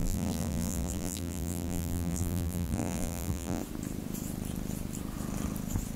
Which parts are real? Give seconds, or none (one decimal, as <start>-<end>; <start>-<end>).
3.6-6.0